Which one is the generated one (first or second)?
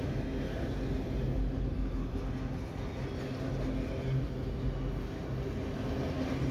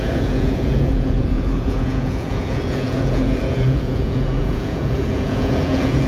second